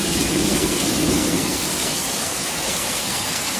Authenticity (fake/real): fake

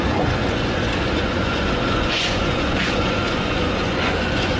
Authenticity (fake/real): fake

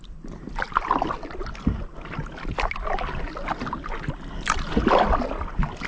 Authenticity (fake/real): real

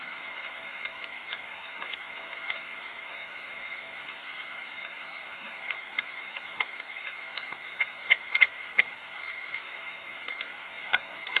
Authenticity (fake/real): fake